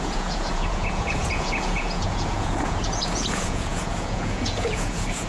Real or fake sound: fake